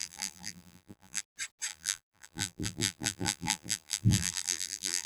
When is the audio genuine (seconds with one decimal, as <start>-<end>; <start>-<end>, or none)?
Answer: 1.2-1.7